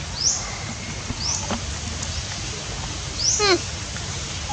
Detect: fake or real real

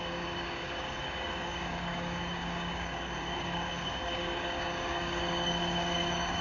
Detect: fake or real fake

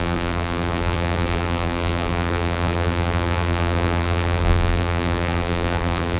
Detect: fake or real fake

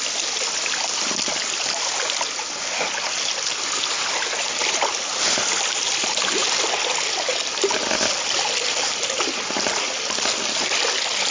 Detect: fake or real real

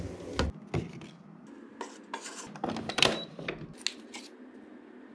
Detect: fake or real real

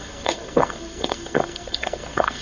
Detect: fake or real fake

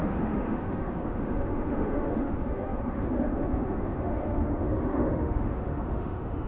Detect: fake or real fake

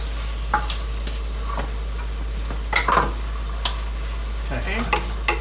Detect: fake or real real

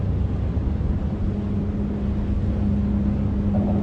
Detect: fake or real real